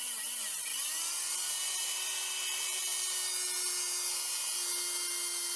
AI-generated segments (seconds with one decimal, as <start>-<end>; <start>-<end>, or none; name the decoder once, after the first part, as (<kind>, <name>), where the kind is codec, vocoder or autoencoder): none